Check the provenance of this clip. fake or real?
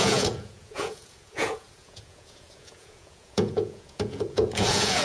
fake